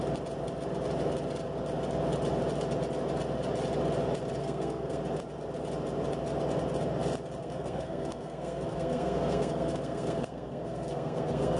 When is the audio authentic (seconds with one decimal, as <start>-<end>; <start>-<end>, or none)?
0.0-4.4; 5.0-7.4